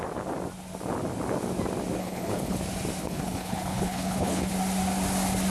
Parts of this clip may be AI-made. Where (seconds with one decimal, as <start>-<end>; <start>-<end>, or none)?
2.0-2.6; 3.0-4.5